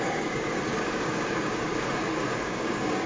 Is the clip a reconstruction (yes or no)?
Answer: yes